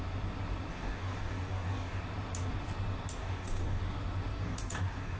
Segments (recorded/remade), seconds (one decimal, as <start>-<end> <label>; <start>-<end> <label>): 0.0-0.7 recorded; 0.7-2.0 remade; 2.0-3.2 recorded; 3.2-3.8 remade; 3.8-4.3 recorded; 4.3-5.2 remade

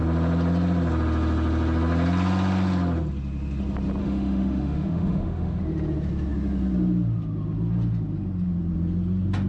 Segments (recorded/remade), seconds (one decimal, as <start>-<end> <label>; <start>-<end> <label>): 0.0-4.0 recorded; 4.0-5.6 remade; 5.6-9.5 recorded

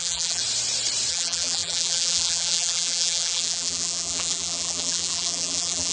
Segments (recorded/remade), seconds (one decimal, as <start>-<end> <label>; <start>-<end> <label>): 0.0-0.4 remade; 0.4-1.1 recorded; 1.1-5.9 remade

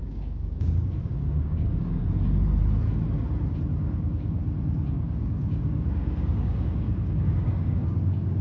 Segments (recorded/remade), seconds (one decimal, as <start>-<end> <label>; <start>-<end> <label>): 0.0-2.0 remade; 2.0-3.8 recorded; 3.8-4.4 remade; 4.4-4.9 recorded; 4.9-8.4 remade

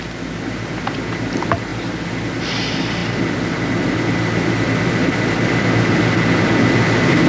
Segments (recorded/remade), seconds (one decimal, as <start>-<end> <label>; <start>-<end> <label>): 0.0-7.3 recorded

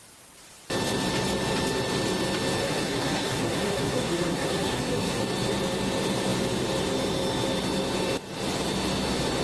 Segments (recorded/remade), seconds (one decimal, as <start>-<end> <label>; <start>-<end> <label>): 0.0-2.6 recorded; 2.6-5.2 remade; 5.2-9.4 recorded

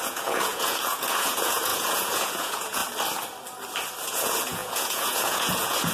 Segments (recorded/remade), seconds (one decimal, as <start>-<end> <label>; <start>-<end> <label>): 0.0-2.8 remade; 2.8-4.0 recorded; 4.0-5.9 remade

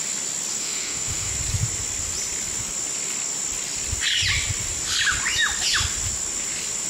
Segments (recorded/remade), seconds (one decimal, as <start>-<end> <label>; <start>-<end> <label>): 0.0-0.6 recorded; 0.6-1.3 remade; 1.3-6.9 recorded